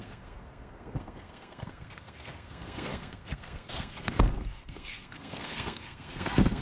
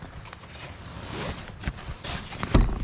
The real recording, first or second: second